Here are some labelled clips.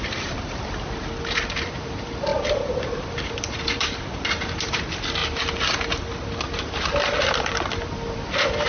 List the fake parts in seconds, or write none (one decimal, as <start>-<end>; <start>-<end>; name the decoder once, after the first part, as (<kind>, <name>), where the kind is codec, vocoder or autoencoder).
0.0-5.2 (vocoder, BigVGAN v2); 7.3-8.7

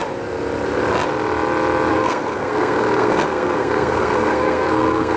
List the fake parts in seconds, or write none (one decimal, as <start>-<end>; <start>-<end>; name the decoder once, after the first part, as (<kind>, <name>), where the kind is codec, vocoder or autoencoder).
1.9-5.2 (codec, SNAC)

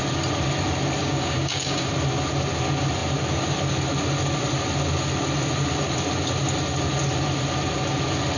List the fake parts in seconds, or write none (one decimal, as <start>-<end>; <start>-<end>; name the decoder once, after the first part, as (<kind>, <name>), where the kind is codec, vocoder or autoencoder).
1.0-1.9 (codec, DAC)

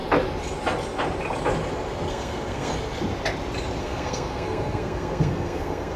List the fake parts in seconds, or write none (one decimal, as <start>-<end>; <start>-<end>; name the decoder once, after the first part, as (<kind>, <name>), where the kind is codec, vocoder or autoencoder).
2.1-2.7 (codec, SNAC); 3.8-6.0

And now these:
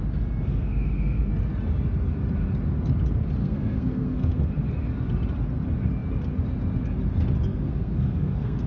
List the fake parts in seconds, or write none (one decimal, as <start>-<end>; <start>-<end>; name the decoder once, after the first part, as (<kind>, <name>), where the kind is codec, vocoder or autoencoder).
0.5-1.3 (codec, SNAC); 3.4-4.5; 7.5-8.7

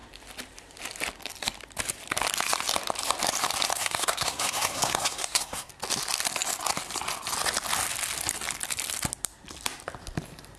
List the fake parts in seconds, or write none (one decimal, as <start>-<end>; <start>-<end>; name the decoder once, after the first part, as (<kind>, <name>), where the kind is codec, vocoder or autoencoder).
3.7-5.7 (codec, SNAC)

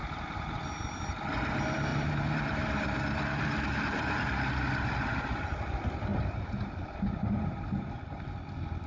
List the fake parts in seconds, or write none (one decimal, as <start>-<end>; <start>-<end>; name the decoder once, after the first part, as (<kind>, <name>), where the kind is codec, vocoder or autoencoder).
0.0-0.6 (vocoder, BigVGAN v2); 1.9-4.5; 6.1-7.6